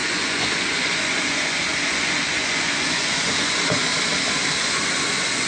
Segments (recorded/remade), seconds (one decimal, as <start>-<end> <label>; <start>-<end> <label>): 0.0-3.9 remade; 3.9-4.6 recorded; 4.6-5.5 remade